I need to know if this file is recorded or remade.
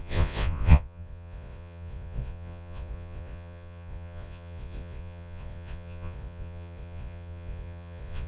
remade